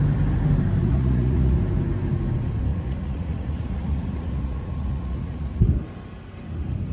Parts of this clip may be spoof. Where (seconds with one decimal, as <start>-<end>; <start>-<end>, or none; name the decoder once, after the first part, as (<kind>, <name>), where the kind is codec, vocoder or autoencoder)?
0.8-1.6 (vocoder, Vocos); 2.7-5.6